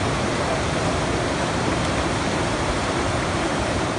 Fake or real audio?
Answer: fake